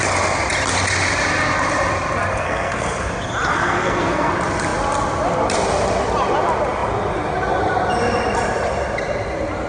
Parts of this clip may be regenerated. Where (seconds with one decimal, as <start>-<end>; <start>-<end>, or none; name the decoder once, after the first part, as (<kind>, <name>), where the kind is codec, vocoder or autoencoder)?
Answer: 2.3-3.1 (codec, SNAC); 3.5-4.3